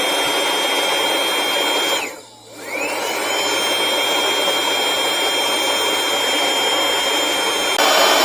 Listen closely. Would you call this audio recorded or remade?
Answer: recorded